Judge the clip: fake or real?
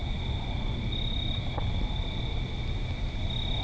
real